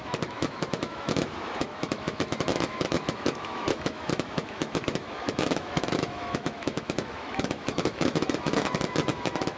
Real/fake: fake